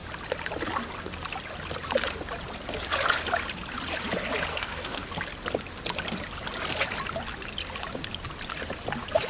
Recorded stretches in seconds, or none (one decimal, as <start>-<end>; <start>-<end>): 0.0-4.5; 5.1-9.3